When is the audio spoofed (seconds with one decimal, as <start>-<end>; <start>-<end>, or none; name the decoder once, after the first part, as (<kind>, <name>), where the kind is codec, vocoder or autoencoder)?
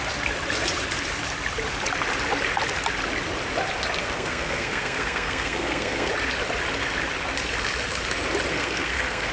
4.0-6.1 (codec, SNAC); 8.5-9.3